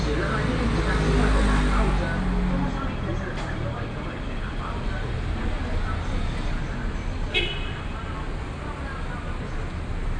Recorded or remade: recorded